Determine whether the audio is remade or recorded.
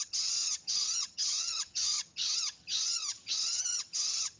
remade